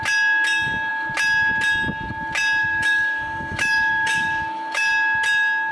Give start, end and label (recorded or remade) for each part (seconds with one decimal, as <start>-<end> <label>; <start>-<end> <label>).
0.0-2.6 recorded; 2.6-4.9 remade; 4.9-5.7 recorded